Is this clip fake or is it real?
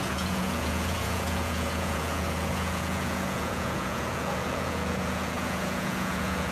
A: fake